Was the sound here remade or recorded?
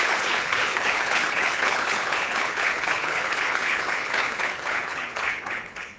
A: remade